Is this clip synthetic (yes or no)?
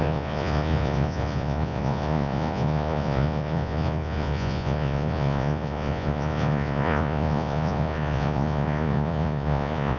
yes